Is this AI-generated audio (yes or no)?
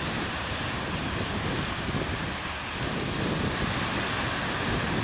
no